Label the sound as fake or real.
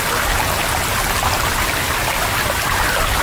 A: real